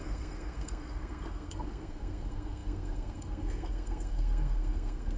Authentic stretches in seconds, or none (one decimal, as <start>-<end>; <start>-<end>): none